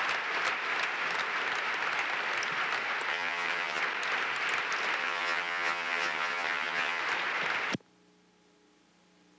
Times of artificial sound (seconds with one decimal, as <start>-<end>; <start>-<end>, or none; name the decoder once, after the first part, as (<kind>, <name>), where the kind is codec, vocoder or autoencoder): 3.1-3.8 (vocoder, HiFi-GAN); 5.0-7.0